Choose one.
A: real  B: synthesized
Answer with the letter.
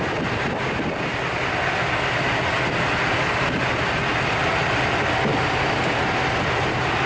A